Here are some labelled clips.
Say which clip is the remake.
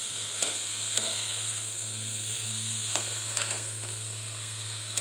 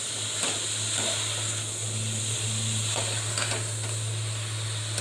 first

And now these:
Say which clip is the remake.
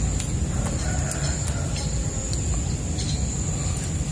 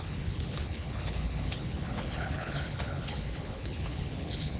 second